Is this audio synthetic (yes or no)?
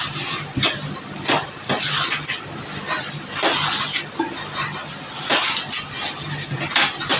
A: no